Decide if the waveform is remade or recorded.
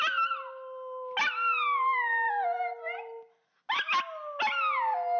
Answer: recorded